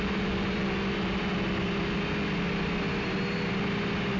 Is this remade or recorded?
recorded